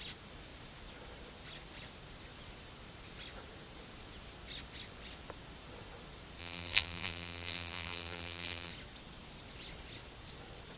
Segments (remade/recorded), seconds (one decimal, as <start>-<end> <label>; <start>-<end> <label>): 0.0-6.4 recorded; 6.4-8.7 remade; 8.7-10.8 recorded